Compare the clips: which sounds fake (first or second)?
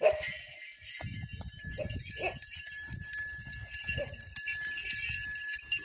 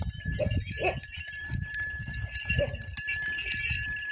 second